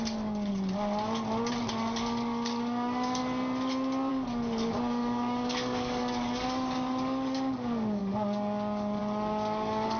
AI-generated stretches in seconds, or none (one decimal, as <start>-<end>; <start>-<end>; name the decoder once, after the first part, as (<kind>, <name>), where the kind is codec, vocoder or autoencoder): 0.0-0.5 (codec, DAC); 1.6-3.2; 4.1-10.0

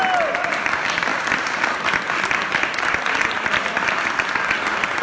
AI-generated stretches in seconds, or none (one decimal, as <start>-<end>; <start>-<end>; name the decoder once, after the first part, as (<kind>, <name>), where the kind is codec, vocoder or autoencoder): none

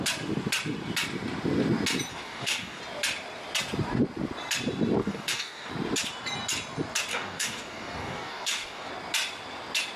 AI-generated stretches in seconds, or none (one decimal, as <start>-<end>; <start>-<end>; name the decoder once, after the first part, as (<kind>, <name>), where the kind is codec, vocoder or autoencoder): 2.1-2.8 (codec, DAC); 5.0-5.7; 7.1-8.9